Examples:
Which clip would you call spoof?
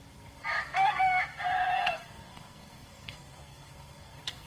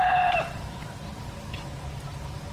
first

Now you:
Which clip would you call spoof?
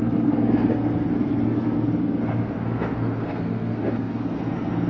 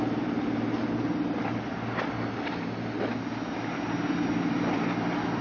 first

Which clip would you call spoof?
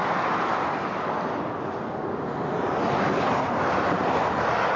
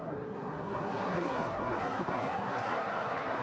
second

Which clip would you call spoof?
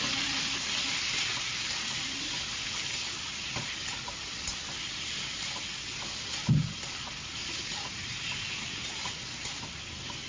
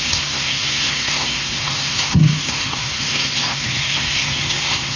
second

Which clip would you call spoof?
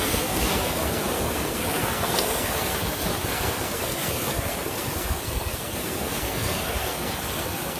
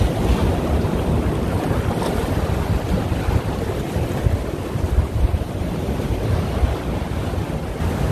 first